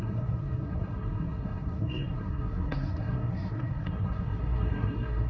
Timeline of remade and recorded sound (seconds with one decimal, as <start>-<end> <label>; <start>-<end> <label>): 0.0-5.3 remade